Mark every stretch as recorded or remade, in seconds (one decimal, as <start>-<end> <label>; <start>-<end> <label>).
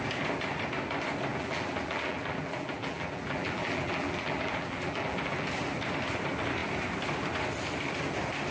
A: 0.0-1.3 recorded; 1.3-5.5 remade; 5.5-8.5 recorded